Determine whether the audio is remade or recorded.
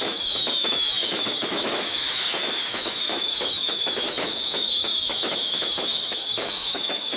remade